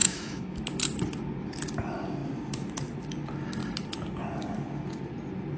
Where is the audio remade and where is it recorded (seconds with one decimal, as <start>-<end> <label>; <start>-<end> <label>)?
0.0-0.6 remade; 0.6-5.6 recorded